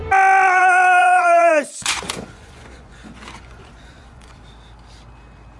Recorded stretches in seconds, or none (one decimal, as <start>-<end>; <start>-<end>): 0.0-1.0; 4.4-5.6